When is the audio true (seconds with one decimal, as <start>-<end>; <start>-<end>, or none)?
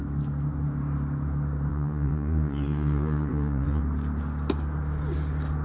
0.0-1.7; 3.8-5.6